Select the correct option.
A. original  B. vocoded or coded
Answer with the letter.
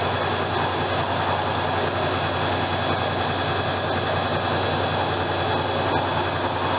A